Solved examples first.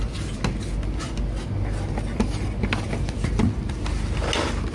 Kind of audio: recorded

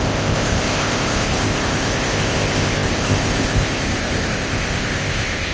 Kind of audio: remade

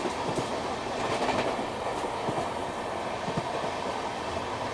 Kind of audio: recorded